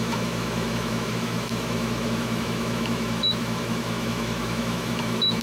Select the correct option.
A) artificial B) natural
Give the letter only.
A